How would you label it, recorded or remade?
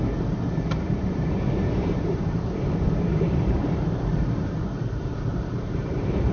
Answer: remade